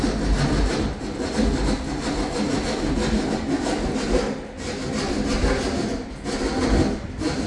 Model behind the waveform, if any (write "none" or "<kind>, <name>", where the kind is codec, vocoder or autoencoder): none